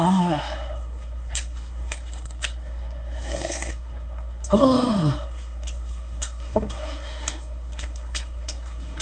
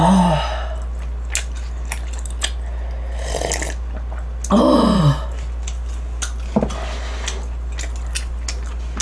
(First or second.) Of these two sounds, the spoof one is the first